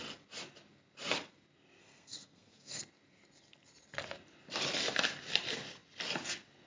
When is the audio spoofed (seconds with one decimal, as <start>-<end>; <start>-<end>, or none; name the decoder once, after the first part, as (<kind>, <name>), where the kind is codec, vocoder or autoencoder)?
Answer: 1.8-2.8 (codec, SNAC)